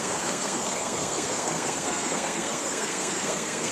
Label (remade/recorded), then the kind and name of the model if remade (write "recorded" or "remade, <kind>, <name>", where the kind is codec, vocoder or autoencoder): remade, codec, SNAC